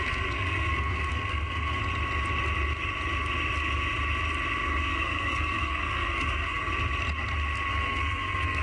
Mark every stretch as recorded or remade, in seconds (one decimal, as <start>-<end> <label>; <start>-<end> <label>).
0.0-1.8 remade; 1.8-4.9 recorded; 4.9-6.7 remade; 6.7-7.7 recorded; 7.7-8.6 remade